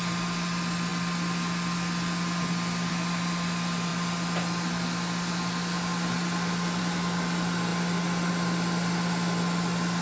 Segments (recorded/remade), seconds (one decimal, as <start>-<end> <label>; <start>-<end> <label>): 0.0-10.0 recorded